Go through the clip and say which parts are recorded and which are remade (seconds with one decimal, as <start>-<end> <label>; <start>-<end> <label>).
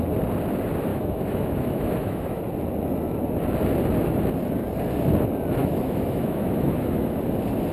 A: 0.0-0.9 recorded; 0.9-2.4 remade; 2.4-5.6 recorded; 5.6-7.2 remade; 7.2-7.7 recorded